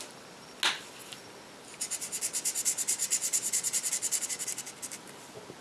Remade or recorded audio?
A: recorded